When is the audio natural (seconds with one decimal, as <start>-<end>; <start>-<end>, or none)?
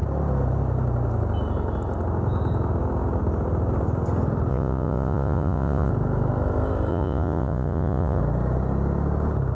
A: 0.0-4.5; 5.9-6.9; 8.2-9.5